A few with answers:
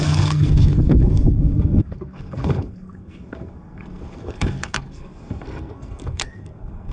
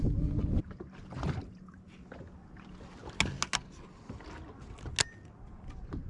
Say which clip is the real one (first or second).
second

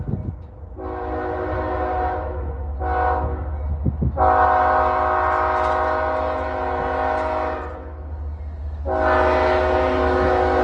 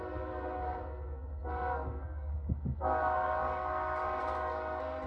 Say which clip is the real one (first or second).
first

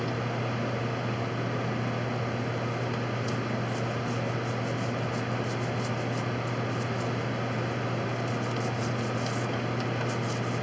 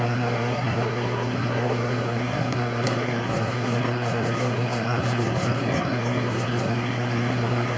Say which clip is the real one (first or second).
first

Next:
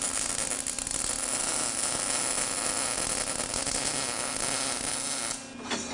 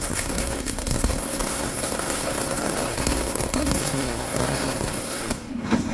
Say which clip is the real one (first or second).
first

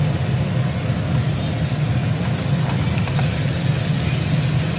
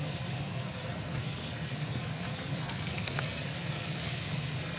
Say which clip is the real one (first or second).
first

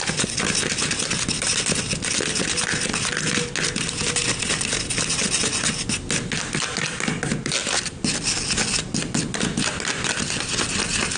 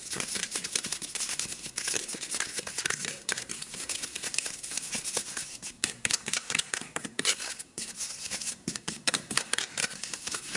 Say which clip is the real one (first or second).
first